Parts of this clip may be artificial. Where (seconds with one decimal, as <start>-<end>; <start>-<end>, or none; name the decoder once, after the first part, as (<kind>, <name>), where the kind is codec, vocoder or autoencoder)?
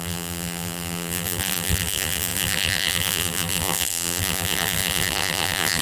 0.0-5.8 (vocoder, BigVGAN v2)